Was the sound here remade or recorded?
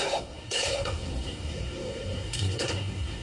remade